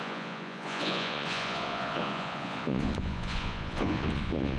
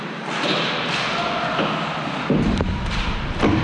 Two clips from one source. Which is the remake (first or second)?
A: first